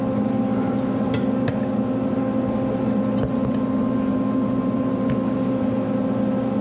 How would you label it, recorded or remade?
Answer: recorded